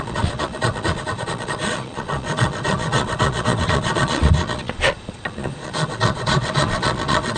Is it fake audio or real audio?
fake